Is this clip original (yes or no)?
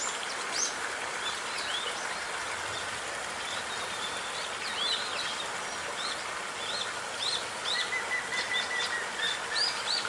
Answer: yes